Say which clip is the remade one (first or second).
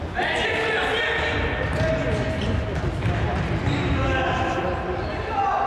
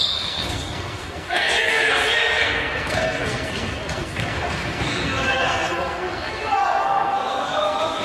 second